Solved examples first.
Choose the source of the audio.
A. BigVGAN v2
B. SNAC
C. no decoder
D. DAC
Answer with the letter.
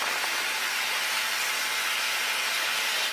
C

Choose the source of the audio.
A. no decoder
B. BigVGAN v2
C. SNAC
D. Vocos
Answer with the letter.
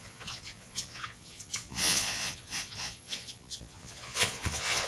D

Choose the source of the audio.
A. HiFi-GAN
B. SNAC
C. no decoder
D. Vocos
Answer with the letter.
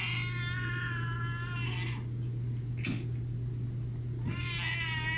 C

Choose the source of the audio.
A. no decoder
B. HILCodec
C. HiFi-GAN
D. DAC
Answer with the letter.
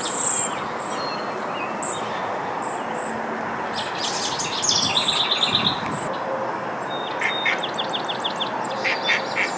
A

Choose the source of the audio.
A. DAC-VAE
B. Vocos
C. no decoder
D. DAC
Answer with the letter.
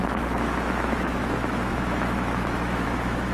A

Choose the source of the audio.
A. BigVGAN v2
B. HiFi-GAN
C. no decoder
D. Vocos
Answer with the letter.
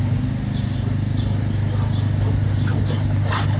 C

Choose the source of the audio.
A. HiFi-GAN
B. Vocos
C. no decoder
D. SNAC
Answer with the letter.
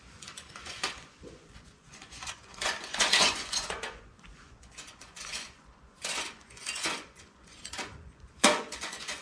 B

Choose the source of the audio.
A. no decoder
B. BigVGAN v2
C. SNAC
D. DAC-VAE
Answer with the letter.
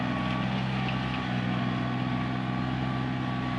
A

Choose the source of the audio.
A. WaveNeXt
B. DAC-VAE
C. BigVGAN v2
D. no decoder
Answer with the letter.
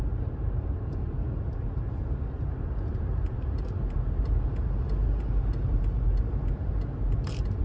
C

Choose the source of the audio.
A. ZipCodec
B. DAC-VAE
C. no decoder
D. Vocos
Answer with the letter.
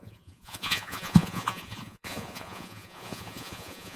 D